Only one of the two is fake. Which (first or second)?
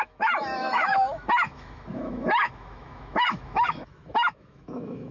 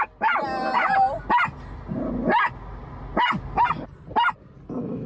first